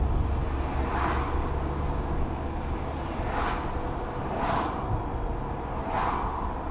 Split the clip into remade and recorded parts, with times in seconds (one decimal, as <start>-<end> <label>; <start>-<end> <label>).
0.0-1.4 recorded; 1.4-2.9 remade; 2.9-6.7 recorded